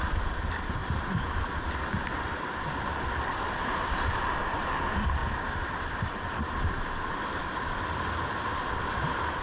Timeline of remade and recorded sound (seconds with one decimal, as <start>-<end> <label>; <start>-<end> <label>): 0.0-3.7 recorded; 3.7-4.8 remade; 4.8-5.2 recorded; 5.2-5.8 remade; 5.8-9.4 recorded